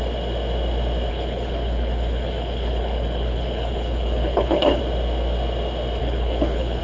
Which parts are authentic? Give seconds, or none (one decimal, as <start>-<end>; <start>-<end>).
0.0-1.1; 4.8-6.0